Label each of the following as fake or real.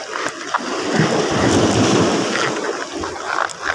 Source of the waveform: real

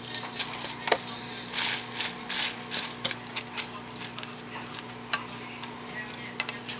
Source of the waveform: real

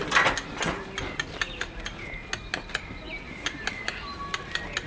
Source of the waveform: real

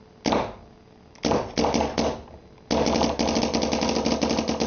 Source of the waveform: real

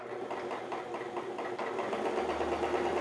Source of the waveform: real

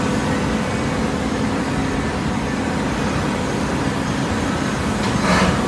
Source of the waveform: real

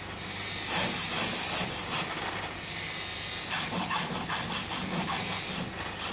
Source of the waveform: real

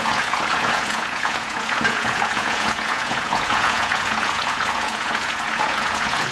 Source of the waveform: fake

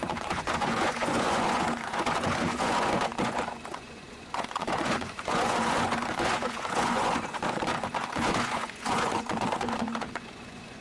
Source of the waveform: fake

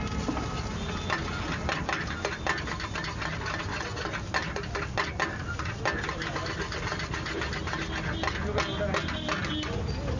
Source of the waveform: real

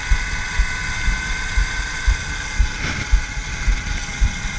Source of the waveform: real